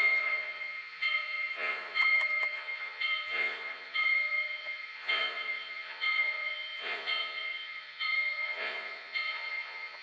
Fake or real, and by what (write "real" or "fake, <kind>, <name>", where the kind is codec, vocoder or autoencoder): fake, vocoder, Vocos